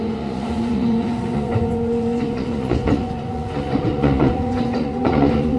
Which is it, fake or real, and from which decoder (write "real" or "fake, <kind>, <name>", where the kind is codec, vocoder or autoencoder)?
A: fake, vocoder, Vocos